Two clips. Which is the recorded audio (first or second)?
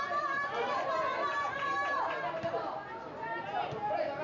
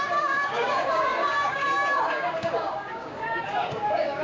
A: first